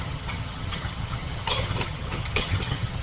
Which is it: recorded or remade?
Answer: remade